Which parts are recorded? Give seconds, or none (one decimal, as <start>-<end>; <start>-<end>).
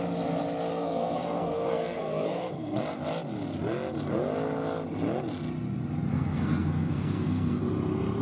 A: 0.0-0.7; 2.8-6.1; 7.6-8.2